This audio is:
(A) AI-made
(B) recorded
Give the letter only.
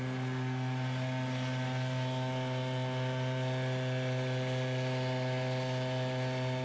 B